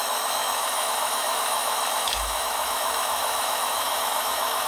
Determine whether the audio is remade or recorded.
remade